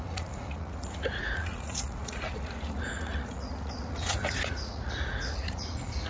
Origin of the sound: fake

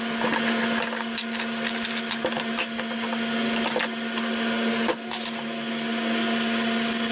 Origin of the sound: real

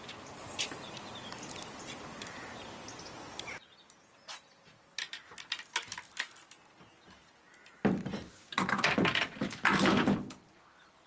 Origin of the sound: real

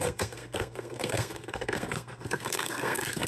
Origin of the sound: fake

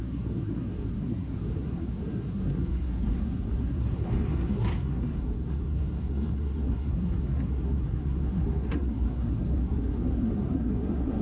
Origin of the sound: fake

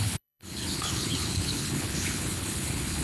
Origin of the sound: fake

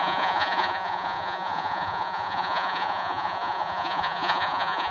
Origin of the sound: fake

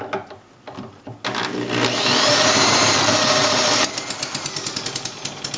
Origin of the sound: real